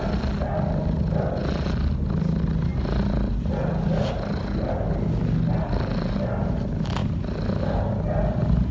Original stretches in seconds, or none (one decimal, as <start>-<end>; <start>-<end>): 0.0-8.7